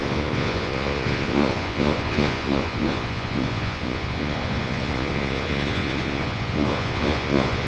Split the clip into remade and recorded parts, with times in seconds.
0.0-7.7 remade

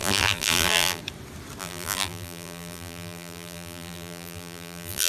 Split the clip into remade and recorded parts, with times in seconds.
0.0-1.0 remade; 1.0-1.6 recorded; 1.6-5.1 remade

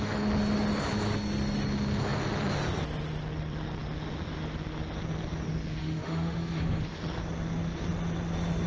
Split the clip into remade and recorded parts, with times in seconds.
0.0-5.8 recorded; 5.8-6.8 remade; 6.8-8.7 recorded

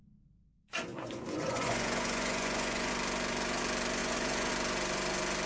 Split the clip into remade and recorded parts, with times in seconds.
0.0-0.9 recorded; 0.9-2.9 remade; 2.9-4.0 recorded; 4.0-4.5 remade; 4.5-5.5 recorded